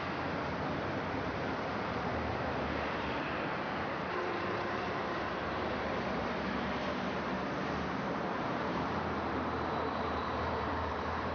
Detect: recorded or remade remade